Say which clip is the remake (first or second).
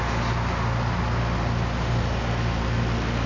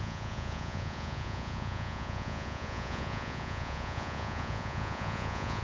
second